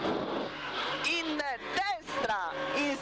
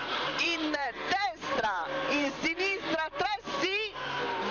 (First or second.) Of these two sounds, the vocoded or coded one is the second